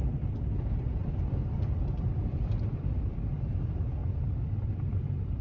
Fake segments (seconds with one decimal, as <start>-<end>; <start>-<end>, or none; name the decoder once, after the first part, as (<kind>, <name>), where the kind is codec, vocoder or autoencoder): 0.0-5.4 (vocoder, BigVGAN v2)

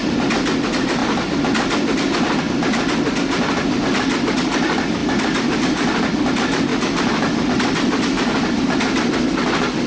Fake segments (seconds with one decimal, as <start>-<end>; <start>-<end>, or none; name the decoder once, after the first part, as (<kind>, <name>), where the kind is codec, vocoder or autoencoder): 1.0-2.4 (vocoder, BigVGAN v2); 5.0-6.2; 6.7-9.3

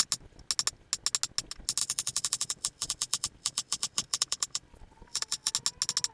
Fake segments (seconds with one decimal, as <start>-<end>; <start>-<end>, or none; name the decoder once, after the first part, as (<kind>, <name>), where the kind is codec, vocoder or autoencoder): 1.8-5.5 (vocoder, BigVGAN v2)

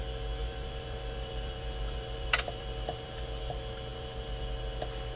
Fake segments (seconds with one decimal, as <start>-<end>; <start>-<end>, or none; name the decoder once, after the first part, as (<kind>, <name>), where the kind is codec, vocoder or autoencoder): 0.4-3.5 (vocoder, BigVGAN v2); 3.9-4.4